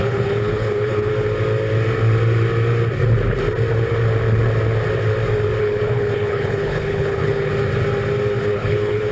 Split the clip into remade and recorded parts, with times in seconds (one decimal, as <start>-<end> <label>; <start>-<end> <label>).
0.0-1.1 remade; 1.1-5.6 recorded; 5.6-7.5 remade; 7.5-8.4 recorded; 8.4-9.1 remade